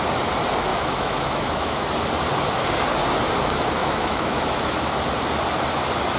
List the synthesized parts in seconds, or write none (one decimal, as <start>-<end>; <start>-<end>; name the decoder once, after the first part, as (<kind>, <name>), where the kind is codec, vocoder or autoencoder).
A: 0.7-1.9 (autoencoder, DAC-VAE); 3.8-5.0

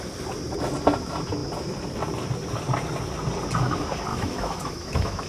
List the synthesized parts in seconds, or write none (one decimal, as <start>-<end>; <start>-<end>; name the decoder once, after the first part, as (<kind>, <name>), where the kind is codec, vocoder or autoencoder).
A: 4.1-5.3 (autoencoder, DAC-VAE)

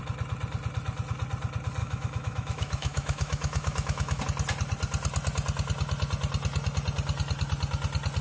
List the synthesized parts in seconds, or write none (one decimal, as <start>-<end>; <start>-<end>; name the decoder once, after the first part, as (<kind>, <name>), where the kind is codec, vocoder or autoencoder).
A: 1.8-4.2 (autoencoder, DAC-VAE)

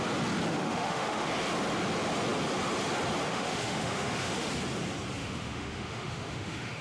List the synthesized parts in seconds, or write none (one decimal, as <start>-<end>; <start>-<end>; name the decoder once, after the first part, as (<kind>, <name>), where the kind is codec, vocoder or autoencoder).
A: 0.5-1.3 (autoencoder, DAC-VAE); 3.3-4.5; 5.2-6.8

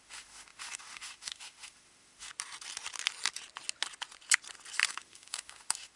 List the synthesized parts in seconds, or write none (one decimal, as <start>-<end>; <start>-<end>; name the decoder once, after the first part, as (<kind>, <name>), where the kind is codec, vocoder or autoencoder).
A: 0.0-2.3 (autoencoder, DAC-VAE); 4.9-6.0